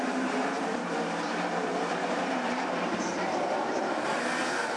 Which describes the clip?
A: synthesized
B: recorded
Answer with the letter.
A